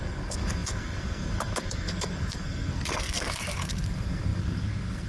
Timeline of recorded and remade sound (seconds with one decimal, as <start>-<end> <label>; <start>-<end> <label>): 0.0-5.1 remade